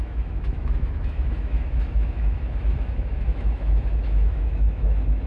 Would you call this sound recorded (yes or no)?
no